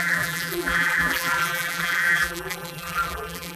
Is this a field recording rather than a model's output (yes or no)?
no